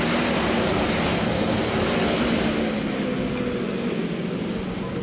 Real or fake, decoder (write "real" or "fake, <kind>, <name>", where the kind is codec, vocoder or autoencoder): real